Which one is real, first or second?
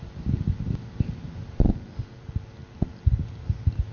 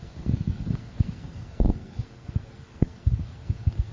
first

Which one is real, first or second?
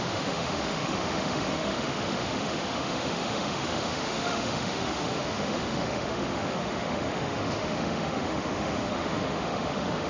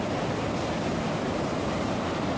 second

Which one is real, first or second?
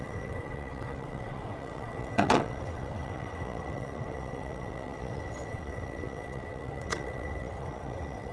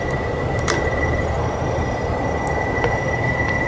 second